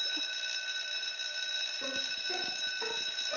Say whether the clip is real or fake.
real